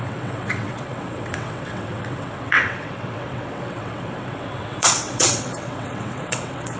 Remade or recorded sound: remade